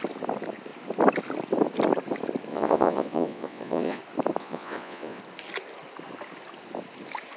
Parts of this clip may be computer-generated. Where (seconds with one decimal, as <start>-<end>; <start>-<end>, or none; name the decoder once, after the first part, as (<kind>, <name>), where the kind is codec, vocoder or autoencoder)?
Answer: 2.5-4.0 (vocoder, Vocos); 4.4-5.2